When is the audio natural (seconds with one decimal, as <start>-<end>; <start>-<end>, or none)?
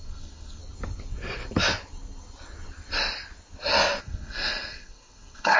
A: 0.6-4.0